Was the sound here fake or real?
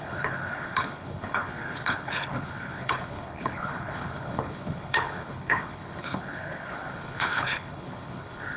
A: fake